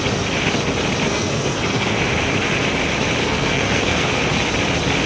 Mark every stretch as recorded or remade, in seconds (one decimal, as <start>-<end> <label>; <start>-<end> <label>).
0.0-1.1 recorded; 1.1-2.0 remade; 2.0-3.2 recorded; 3.2-4.2 remade; 4.2-5.1 recorded